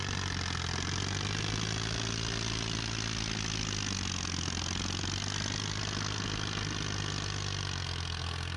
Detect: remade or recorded recorded